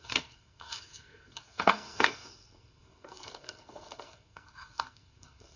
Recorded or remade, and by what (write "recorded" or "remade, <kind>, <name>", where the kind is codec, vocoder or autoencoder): remade, codec, SNAC